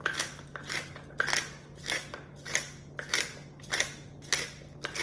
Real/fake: real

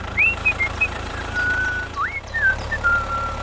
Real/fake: fake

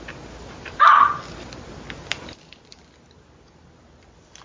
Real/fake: real